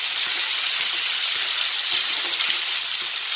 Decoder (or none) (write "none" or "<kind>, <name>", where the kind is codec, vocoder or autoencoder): vocoder, BigVGAN v2